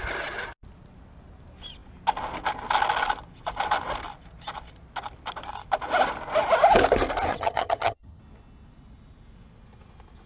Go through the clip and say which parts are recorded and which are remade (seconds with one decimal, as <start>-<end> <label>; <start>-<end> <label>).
0.0-7.3 recorded; 7.3-8.2 remade; 8.2-10.3 recorded